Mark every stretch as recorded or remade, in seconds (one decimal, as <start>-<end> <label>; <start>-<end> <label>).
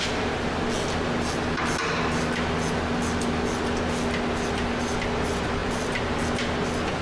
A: 0.0-7.0 recorded